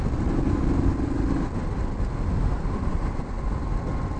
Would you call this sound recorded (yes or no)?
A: yes